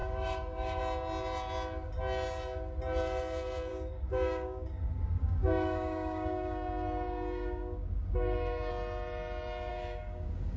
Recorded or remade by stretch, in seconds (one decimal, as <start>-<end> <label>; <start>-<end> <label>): 0.0-0.8 remade; 0.8-3.7 recorded; 3.7-8.7 remade; 8.7-9.7 recorded; 9.7-10.6 remade